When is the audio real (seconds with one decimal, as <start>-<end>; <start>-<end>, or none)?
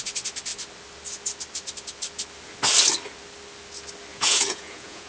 0.0-4.1